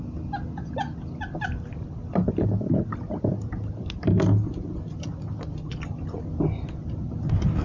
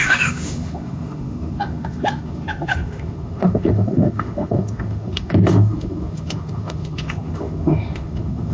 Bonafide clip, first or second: first